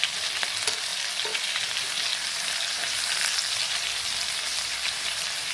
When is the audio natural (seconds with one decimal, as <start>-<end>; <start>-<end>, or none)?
0.0-5.5